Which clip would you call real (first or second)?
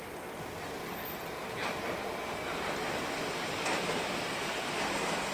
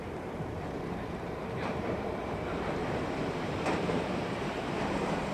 first